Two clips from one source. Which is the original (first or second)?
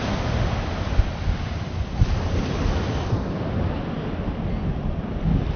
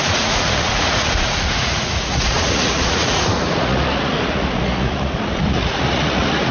first